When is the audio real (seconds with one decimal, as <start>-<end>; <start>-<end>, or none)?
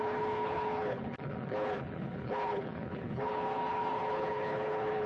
none